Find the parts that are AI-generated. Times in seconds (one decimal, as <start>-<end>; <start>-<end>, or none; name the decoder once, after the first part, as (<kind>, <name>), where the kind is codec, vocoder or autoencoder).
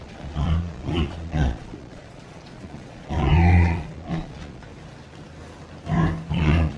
0.0-4.7 (vocoder, Vocos); 6.3-6.8